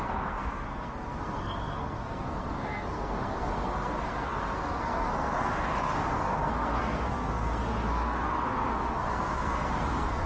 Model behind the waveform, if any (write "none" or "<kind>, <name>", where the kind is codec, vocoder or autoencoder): codec, SNAC